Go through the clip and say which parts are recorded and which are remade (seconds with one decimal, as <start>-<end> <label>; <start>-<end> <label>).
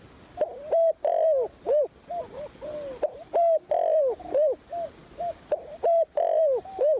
0.0-5.0 recorded; 5.0-5.5 remade; 5.5-7.0 recorded